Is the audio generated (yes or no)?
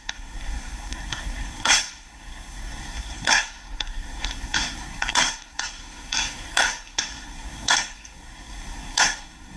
yes